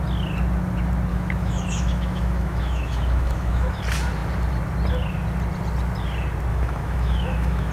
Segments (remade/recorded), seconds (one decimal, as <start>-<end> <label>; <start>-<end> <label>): 0.0-1.1 recorded; 1.1-3.8 remade; 3.8-6.5 recorded; 6.5-7.7 remade